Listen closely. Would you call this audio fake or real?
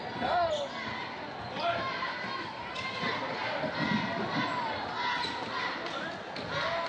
real